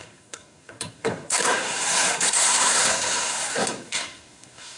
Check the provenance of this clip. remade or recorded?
remade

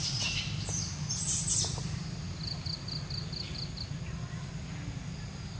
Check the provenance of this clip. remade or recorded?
recorded